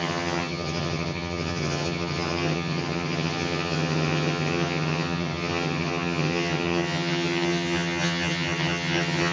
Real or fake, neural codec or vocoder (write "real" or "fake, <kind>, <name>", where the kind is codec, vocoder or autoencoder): fake, vocoder, HiFi-GAN